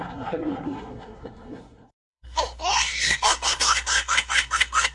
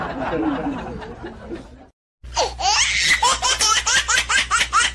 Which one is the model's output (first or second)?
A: first